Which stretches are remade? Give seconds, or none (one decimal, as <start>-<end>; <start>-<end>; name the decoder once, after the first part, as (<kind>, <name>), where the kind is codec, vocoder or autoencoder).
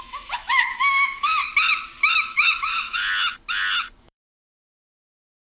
0.0-1.4 (autoencoder, DAC-VAE); 2.0-3.0; 4.0-5.5